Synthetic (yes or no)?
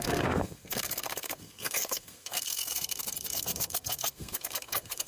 yes